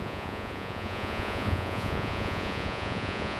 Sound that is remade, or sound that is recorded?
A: remade